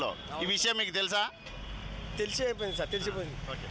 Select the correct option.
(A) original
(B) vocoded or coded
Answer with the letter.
A